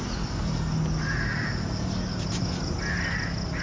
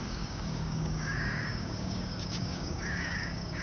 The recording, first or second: first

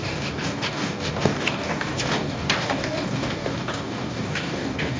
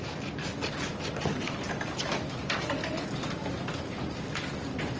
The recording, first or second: second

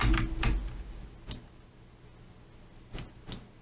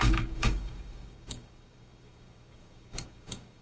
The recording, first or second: first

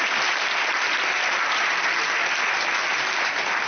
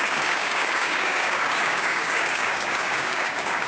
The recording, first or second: first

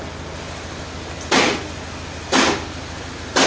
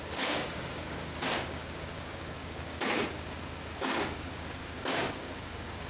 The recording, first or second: first